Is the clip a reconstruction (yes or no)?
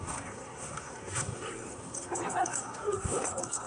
yes